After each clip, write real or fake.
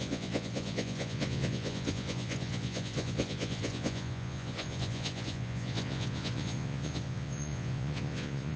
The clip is fake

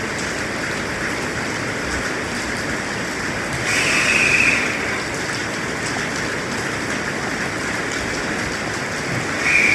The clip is real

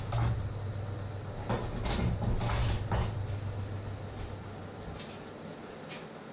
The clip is real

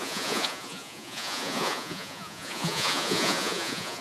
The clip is fake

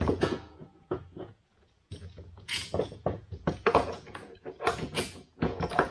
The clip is fake